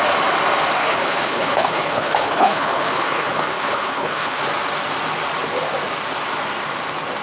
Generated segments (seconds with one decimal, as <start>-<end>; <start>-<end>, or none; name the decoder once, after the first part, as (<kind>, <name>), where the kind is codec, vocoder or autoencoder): 0.8-4.4 (codec, HILCodec)